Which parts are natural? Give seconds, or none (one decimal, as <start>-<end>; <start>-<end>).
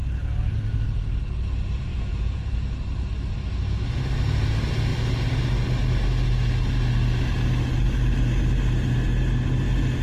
0.0-1.9; 2.5-10.0